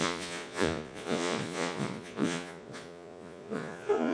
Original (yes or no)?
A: no